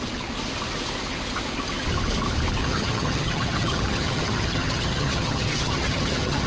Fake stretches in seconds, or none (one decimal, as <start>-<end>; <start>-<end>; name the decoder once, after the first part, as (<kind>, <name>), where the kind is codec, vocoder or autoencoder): 2.6-6.5 (vocoder, HiFi-GAN)